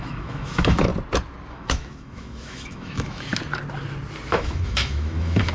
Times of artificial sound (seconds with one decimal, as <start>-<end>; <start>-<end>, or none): 0.0-0.9; 1.5-3.3; 4.3-5.5